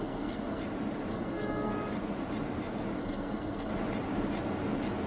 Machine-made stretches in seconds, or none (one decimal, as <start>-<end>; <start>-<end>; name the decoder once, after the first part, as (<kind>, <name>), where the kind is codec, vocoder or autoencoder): 0.0-0.6 (codec, SNAC); 1.1-1.7; 3.0-3.7